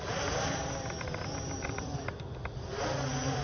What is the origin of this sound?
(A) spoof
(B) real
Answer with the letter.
B